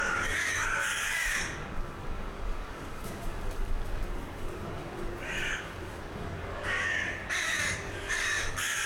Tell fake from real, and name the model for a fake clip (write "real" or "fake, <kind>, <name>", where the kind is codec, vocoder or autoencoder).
fake, codec, DAC